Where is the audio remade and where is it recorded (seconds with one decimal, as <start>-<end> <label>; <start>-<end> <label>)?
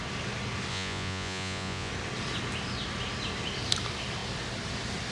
0.0-0.7 recorded; 0.7-1.9 remade; 1.9-5.1 recorded